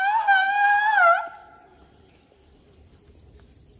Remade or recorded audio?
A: recorded